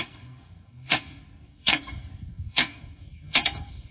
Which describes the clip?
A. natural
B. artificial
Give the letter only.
B